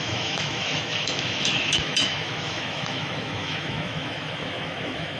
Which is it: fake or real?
fake